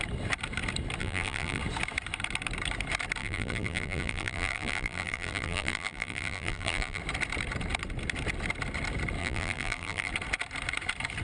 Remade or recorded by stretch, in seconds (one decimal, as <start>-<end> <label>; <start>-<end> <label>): 0.0-1.0 recorded; 1.0-1.6 remade; 1.6-3.2 recorded; 3.2-7.0 remade; 7.0-9.2 recorded; 9.2-10.1 remade; 10.1-11.2 recorded